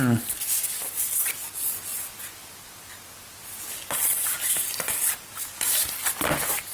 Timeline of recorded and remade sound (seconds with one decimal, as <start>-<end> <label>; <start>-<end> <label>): 0.0-6.7 recorded